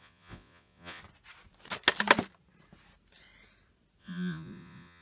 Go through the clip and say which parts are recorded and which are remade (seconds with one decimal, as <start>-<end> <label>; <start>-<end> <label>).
0.0-1.0 remade; 1.0-4.0 recorded; 4.0-5.0 remade